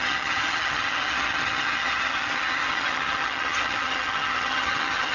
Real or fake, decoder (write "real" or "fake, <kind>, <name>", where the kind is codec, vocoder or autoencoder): fake, vocoder, HiFi-GAN